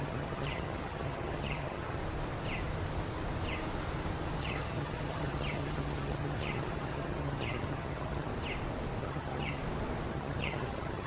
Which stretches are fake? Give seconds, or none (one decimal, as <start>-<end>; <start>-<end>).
0.0-2.0; 4.4-8.3; 9.0-9.6; 10.1-11.1